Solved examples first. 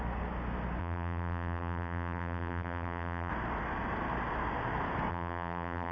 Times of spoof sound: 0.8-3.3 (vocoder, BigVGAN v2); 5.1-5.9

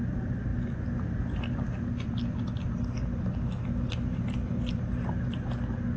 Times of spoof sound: none

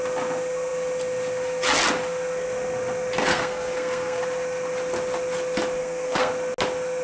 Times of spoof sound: 3.3-4.2 (codec, SNAC); 5.8-6.3

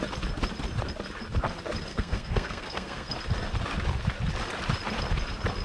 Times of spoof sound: 1.9-3.1 (codec, SNAC)

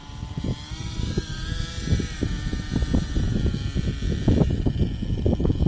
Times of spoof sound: 0.0-3.4 (vocoder, BigVGAN v2)

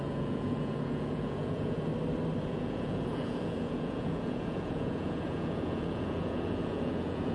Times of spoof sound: 0.0-1.9 (vocoder, Vocos); 2.4-7.3

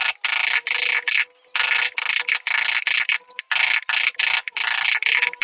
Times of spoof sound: none